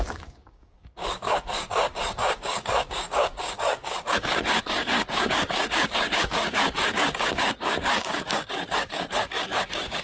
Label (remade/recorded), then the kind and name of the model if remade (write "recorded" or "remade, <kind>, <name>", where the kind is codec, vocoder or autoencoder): remade, codec, DAC